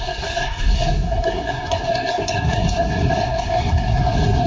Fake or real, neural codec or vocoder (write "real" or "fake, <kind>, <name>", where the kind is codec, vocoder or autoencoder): fake, codec, SNAC